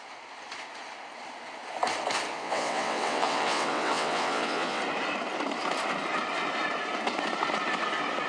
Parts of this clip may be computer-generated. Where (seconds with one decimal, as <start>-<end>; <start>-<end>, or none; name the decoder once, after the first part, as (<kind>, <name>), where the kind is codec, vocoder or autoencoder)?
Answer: 2.3-4.8 (vocoder, WaveNeXt)